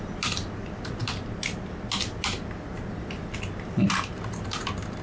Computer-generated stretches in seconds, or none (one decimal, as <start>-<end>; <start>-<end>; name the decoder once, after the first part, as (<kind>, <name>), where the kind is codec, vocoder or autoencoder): none